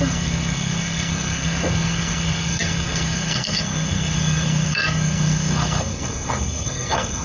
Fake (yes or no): yes